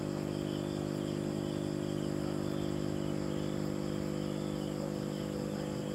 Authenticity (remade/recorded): recorded